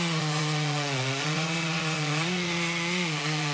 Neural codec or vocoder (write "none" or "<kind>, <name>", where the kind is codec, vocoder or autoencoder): vocoder, Vocos